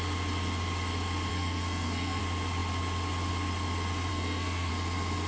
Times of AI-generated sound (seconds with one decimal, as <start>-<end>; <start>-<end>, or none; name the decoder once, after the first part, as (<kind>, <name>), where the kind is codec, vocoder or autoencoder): 1.3-2.2 (codec, SNAC); 4.1-4.7

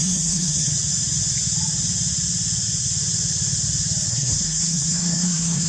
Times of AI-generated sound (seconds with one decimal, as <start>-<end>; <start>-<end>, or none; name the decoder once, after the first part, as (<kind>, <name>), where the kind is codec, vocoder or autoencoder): 0.0-0.7 (codec, SNAC); 4.1-5.7